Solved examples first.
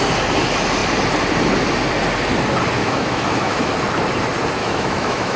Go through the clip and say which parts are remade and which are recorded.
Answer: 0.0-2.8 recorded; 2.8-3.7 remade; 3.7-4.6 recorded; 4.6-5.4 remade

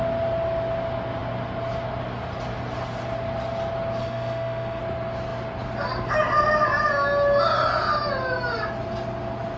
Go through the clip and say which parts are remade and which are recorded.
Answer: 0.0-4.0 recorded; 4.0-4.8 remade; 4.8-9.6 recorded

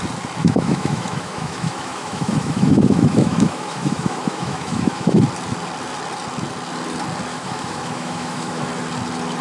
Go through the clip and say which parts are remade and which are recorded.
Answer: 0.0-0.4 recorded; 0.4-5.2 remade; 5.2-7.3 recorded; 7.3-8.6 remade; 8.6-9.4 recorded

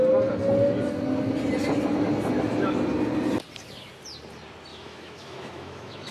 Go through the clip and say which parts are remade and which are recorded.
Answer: 0.0-4.7 recorded; 4.7-6.1 remade

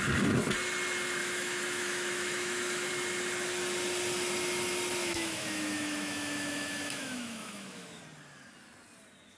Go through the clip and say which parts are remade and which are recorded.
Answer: 0.0-1.2 recorded; 1.2-2.9 remade; 2.9-5.0 recorded; 5.0-8.0 remade; 8.0-9.4 recorded

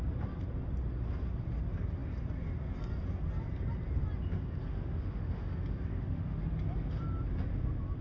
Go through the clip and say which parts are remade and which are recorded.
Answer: 0.0-4.7 recorded; 4.7-5.5 remade; 5.5-5.9 recorded; 5.9-6.4 remade; 6.4-8.0 recorded